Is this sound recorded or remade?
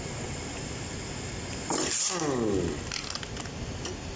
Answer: recorded